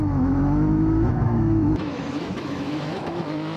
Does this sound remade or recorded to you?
remade